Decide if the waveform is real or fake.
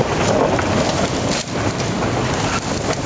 real